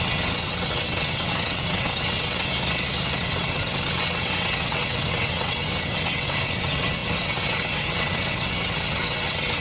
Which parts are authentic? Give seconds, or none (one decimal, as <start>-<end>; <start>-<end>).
2.5-3.2